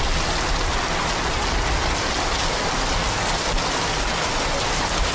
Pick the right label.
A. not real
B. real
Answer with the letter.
B